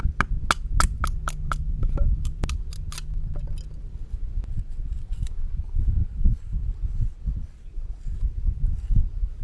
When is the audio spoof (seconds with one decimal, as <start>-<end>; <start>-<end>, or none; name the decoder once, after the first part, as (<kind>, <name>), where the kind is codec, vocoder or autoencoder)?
none